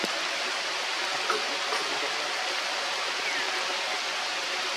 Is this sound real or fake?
real